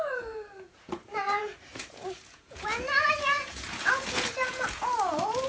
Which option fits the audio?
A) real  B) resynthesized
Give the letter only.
B